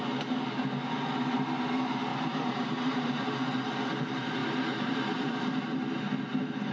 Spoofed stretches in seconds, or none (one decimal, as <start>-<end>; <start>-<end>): 2.1-3.7; 4.4-5.3